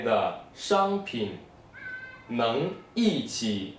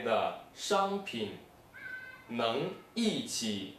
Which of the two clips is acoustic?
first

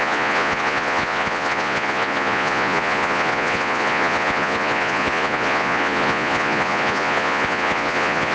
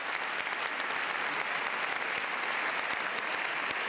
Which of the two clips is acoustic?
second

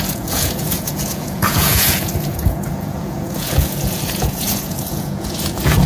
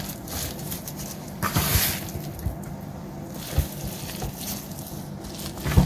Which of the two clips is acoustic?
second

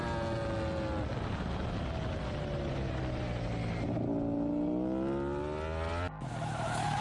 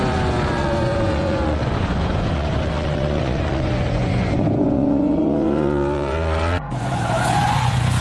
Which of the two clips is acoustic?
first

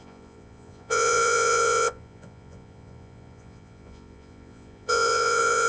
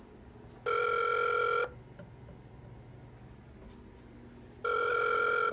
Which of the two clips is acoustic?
second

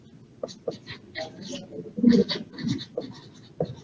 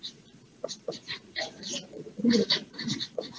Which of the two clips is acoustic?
first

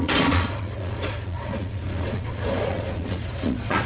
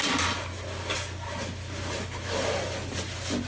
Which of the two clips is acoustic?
second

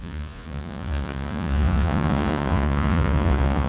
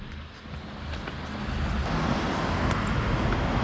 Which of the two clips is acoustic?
second